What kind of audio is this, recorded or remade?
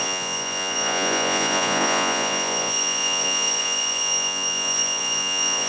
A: remade